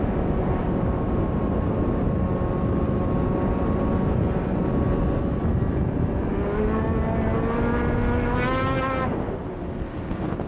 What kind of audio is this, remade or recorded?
recorded